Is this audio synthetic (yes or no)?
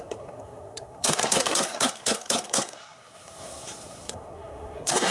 yes